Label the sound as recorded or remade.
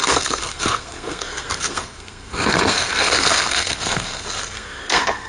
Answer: remade